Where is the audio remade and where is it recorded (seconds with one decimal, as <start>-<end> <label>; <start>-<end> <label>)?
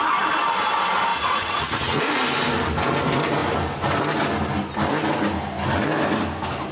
0.0-1.1 recorded; 1.1-2.1 remade; 2.1-6.7 recorded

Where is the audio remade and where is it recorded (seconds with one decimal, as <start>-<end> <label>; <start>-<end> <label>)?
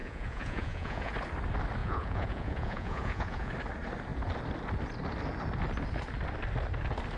0.0-1.1 remade; 1.1-1.8 recorded; 1.8-3.5 remade; 3.5-7.2 recorded